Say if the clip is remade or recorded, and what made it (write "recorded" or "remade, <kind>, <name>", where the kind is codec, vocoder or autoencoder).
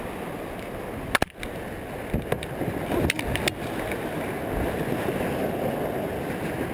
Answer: recorded